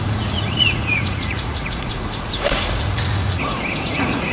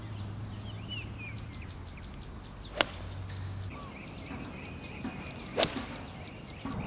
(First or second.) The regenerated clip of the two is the first